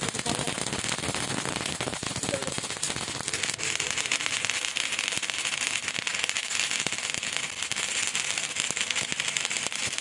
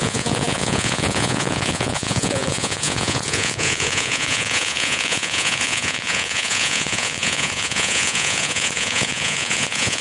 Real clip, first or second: first